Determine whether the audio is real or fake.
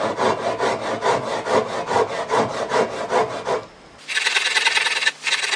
real